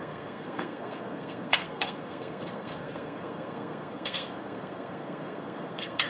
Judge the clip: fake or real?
fake